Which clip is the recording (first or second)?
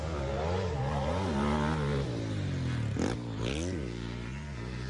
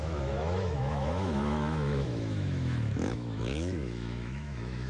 first